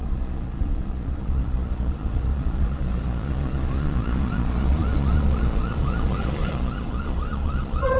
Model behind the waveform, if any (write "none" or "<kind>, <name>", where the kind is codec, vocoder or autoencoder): vocoder, Vocos